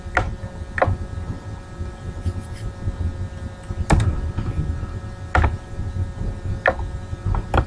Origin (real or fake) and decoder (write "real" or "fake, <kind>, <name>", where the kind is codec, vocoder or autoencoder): real